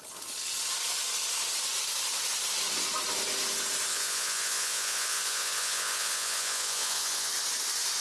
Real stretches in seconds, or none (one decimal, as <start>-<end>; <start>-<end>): 0.0-3.9; 7.3-8.0

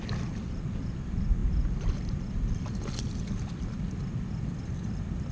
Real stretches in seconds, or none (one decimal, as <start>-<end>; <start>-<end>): 1.4-4.6